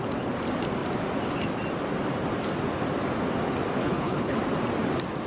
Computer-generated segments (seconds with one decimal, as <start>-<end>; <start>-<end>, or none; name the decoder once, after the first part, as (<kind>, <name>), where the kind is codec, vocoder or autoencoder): 3.8-4.4 (codec, HILCodec)